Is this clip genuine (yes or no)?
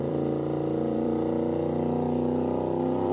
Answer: no